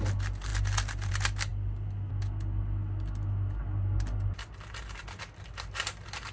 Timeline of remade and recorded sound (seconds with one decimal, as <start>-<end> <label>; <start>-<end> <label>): 0.0-6.3 recorded